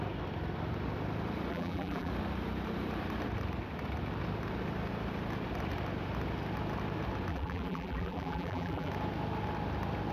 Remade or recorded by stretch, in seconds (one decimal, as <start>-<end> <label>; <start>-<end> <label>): 0.0-1.5 recorded; 1.5-2.1 remade; 2.1-7.3 recorded; 7.3-8.9 remade; 8.9-10.1 recorded